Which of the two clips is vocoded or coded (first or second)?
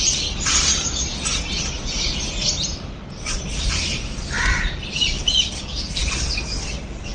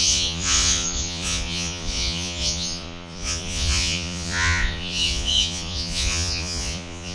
second